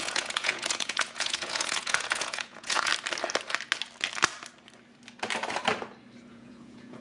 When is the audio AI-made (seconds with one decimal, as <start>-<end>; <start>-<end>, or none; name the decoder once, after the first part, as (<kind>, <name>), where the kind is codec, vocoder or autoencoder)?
0.0-2.9 (vocoder, Vocos); 6.3-7.0